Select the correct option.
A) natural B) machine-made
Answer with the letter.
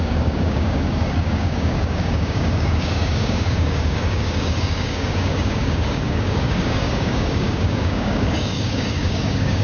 B